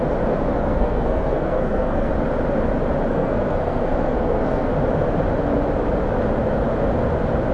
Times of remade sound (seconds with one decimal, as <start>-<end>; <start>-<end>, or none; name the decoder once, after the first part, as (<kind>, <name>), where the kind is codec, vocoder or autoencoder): 0.5-2.1 (codec, SNAC); 3.1-4.7